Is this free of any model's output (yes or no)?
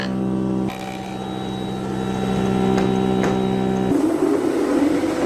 yes